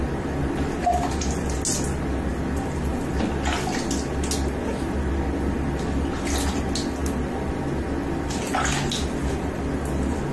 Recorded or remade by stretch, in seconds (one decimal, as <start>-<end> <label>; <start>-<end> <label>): 0.0-10.3 recorded

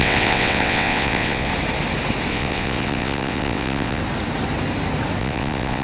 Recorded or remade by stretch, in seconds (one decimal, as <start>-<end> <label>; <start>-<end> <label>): 0.0-1.5 remade; 1.5-2.3 recorded; 2.3-4.0 remade; 4.0-5.2 recorded; 5.2-5.8 remade

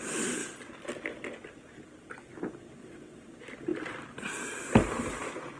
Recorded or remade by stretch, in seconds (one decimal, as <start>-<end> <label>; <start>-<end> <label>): 0.0-2.8 recorded; 2.8-3.3 remade; 3.3-5.6 recorded

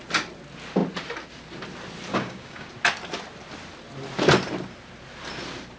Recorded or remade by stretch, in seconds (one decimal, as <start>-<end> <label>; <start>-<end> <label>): 0.0-2.1 recorded; 2.1-2.7 remade; 2.7-5.8 recorded